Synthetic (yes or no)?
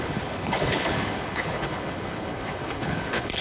yes